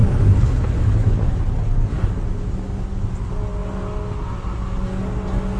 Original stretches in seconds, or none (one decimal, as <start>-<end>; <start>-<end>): 1.3-5.6